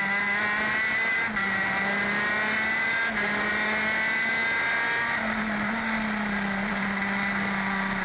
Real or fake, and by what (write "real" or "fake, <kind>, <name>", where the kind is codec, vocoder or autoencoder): real